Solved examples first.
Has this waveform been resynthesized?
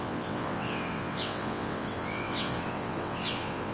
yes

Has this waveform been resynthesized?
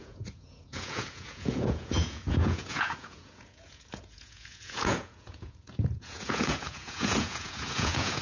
yes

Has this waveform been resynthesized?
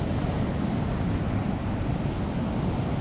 no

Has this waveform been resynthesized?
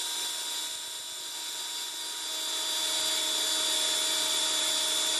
no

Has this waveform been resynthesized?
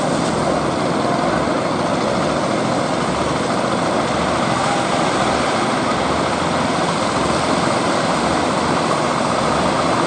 no